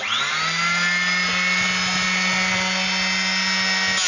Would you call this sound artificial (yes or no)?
no